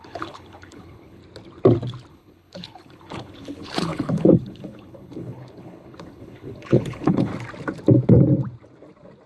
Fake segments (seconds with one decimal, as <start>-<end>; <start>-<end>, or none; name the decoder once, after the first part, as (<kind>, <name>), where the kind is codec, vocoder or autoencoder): 0.0-1.2 (codec, HILCodec); 2.1-7.3